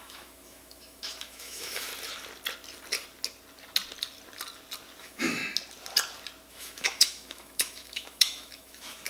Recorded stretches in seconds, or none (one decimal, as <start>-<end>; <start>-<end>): 1.9-5.0; 5.4-6.5